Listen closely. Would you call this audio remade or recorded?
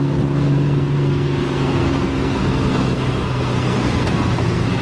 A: remade